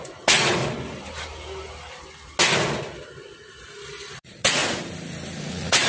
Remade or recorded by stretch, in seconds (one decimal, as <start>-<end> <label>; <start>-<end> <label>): 0.0-0.6 remade; 0.6-4.1 recorded; 4.1-4.6 remade; 4.6-5.4 recorded; 5.4-5.9 remade